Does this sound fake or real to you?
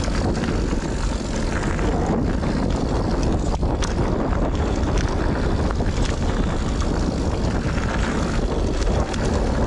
real